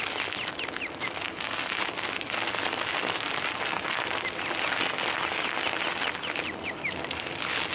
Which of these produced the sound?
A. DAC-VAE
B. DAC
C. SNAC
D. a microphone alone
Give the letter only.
D